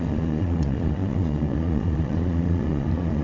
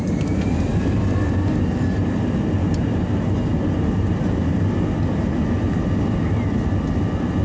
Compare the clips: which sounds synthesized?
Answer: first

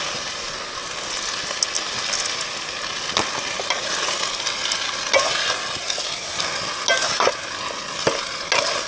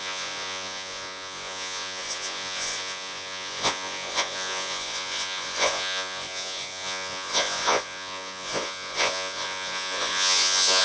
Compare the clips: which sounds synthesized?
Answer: second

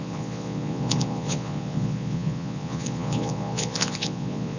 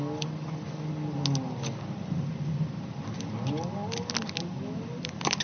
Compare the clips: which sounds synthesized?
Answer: first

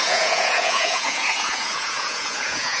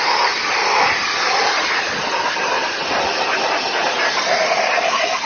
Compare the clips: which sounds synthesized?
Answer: first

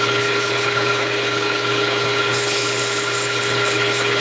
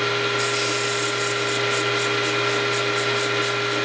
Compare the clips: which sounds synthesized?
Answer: first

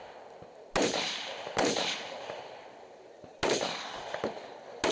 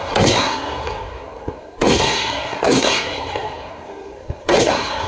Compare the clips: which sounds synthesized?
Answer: second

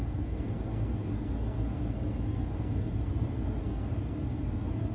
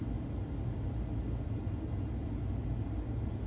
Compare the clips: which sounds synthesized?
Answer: first